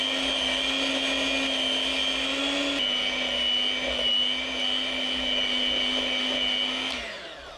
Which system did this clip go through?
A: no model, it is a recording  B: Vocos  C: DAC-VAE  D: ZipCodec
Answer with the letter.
A